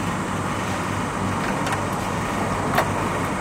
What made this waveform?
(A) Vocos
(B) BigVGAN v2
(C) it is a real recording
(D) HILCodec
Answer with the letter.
C